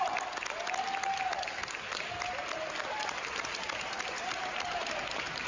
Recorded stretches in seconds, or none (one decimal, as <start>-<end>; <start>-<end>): 0.0-1.6; 4.9-5.5